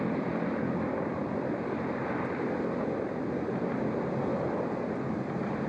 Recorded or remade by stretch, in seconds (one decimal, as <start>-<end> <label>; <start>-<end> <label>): 0.0-5.7 recorded